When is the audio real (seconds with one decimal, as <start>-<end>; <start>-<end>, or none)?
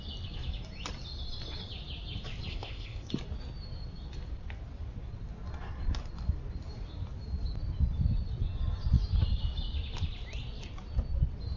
0.0-2.5; 3.1-11.6